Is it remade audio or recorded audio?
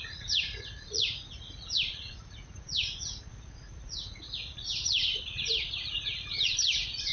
remade